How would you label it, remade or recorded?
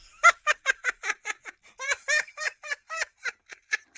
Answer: recorded